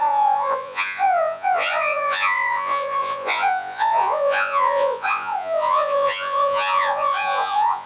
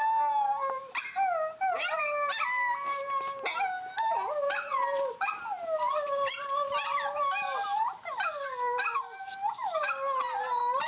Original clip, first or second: second